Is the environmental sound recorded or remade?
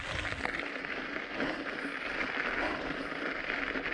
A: recorded